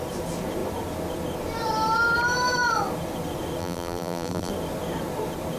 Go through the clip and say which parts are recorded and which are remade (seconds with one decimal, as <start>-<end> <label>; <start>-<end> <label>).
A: 0.0-3.6 recorded; 3.6-4.5 remade; 4.5-5.6 recorded